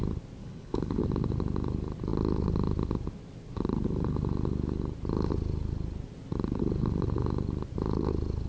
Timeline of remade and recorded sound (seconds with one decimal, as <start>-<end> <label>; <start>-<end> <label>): 0.0-0.4 recorded; 0.4-1.0 remade; 1.0-8.5 recorded